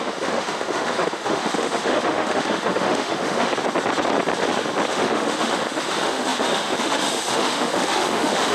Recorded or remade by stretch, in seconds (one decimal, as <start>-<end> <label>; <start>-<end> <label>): 0.0-3.5 remade; 3.5-4.9 recorded; 4.9-8.5 remade